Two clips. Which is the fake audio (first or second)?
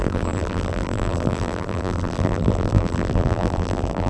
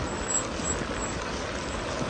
first